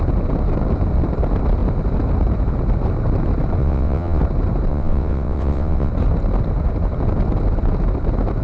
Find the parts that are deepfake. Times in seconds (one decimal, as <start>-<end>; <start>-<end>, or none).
3.6-4.2; 4.7-5.9